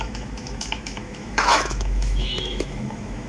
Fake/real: fake